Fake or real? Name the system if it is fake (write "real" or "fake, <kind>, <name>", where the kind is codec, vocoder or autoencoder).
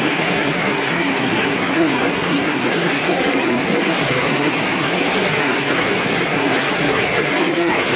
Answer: fake, codec, SNAC